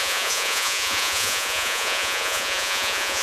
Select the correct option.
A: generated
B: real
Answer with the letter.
A